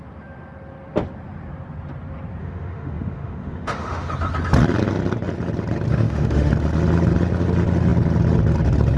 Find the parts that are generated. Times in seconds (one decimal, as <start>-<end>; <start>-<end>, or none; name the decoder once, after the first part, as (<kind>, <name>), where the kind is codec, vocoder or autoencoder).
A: 2.4-4.1 (autoencoder, DAC-VAE); 5.9-6.5